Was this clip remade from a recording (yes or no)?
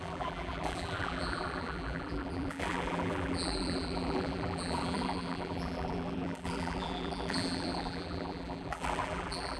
yes